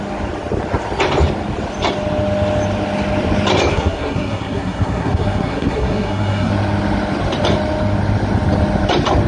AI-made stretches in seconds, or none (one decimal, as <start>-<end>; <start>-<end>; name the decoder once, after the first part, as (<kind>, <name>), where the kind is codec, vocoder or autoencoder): 3.7-6.5 (codec, SNAC)